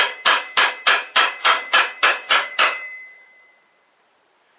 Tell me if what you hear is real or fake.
fake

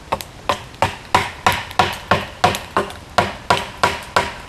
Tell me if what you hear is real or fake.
real